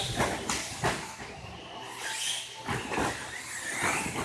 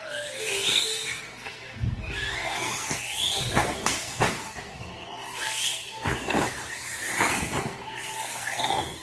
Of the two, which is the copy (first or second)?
second